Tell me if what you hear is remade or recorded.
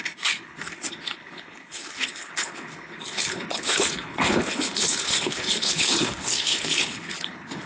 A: remade